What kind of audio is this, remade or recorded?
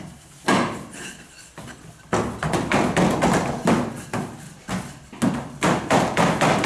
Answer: recorded